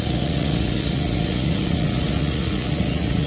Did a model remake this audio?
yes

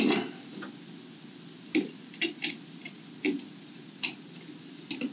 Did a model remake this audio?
no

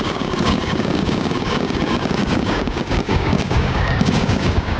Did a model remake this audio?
yes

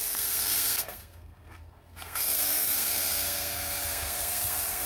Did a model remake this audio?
yes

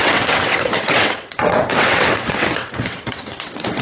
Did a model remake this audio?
yes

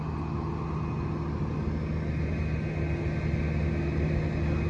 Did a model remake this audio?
no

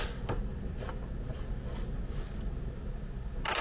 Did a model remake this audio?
no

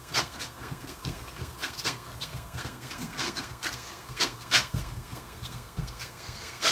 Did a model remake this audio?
yes